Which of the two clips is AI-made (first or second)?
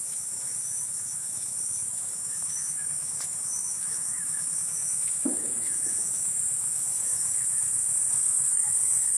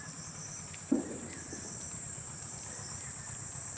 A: first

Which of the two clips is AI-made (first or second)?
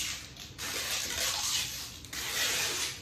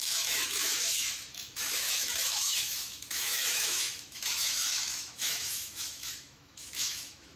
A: second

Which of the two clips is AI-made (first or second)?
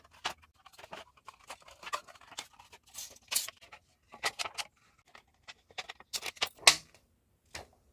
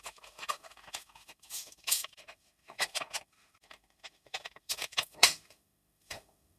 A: second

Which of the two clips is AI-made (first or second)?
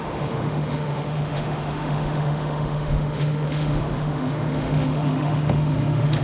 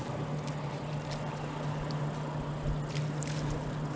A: first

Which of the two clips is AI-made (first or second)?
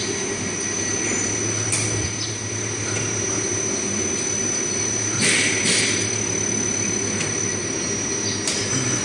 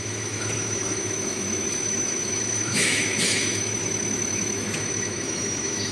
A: second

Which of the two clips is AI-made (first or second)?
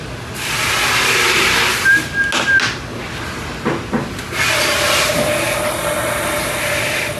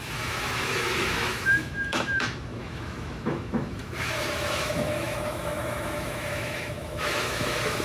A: second